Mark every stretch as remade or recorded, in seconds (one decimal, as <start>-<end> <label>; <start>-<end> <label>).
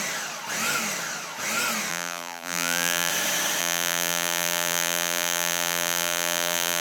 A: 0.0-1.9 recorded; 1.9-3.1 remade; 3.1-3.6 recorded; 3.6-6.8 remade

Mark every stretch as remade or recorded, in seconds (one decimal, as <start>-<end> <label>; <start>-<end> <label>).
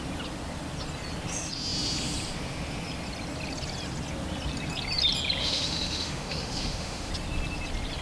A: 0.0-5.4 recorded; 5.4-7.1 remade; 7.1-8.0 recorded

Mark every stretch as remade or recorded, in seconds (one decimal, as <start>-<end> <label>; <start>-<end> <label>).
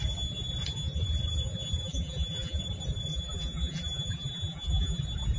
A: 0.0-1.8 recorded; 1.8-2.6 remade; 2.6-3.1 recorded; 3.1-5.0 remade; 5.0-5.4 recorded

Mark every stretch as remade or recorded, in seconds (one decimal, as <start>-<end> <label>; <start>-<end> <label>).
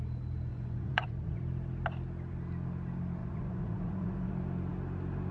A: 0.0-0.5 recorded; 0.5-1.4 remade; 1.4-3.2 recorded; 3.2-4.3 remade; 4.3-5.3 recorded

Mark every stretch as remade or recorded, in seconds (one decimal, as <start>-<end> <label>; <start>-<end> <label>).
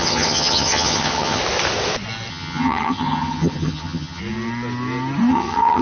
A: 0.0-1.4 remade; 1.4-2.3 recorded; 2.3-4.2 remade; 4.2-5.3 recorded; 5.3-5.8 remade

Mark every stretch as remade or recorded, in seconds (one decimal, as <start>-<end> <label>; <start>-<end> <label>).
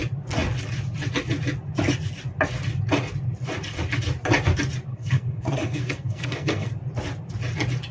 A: 0.0-4.9 recorded; 4.9-6.7 remade; 6.7-7.9 recorded